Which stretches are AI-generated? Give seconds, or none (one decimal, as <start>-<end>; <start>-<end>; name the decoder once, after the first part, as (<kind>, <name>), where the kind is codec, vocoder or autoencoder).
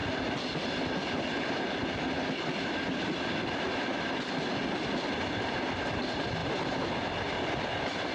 4.4-6.4 (vocoder, BigVGAN v2)